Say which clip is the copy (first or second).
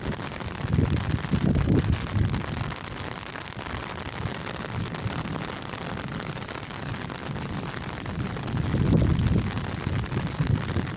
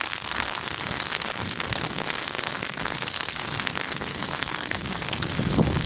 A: second